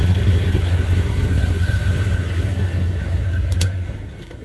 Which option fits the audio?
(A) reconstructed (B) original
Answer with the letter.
A